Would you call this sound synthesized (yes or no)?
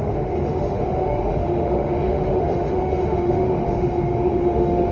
yes